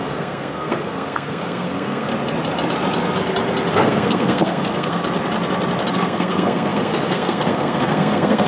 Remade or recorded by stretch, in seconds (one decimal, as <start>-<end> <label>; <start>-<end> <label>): 0.0-2.1 remade; 2.1-3.7 recorded; 3.7-5.0 remade; 5.0-5.9 recorded; 5.9-8.5 remade